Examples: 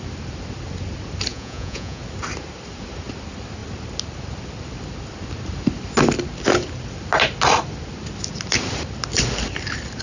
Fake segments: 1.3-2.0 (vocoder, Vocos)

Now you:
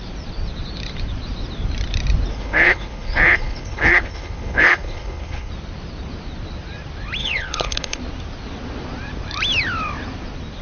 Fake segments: 2.3-5.5 (codec, HILCodec); 7.2-8.0

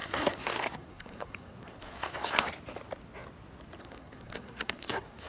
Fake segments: 0.0-2.5 (codec, SNAC); 3.8-5.3